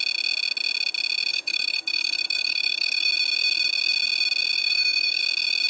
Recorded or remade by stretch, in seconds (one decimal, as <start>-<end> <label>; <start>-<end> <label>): 0.0-1.3 recorded; 1.3-3.1 remade; 3.1-4.6 recorded; 4.6-5.2 remade; 5.2-5.7 recorded

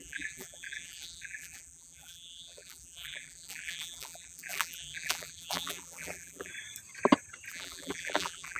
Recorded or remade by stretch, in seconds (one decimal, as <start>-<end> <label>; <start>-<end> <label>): 0.0-6.5 remade; 6.5-7.5 recorded; 7.5-8.6 remade

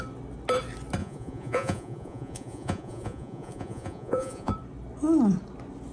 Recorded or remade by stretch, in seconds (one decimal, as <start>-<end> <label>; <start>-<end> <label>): 0.0-1.0 recorded; 1.0-4.5 remade; 4.5-5.9 recorded

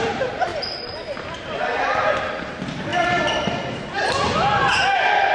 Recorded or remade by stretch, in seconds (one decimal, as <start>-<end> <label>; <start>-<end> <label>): 0.0-5.3 recorded